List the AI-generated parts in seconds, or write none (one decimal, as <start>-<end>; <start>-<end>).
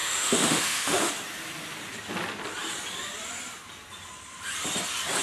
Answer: 0.0-1.1